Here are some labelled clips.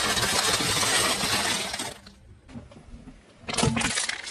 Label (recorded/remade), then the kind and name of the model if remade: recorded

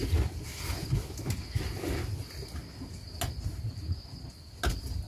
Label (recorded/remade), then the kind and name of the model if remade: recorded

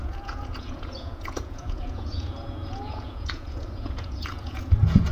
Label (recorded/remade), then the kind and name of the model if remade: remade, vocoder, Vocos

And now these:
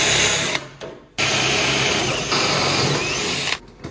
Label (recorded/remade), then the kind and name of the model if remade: recorded